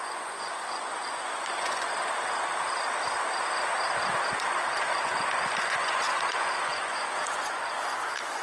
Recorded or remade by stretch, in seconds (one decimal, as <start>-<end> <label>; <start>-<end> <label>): 0.0-1.9 remade; 1.9-4.7 recorded; 4.7-8.4 remade